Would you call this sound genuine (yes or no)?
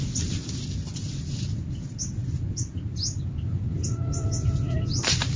yes